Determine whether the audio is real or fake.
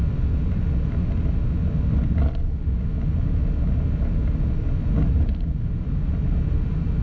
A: real